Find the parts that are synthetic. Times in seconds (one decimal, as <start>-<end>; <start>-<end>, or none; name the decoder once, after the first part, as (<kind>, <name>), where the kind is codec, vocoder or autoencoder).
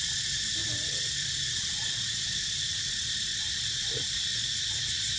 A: none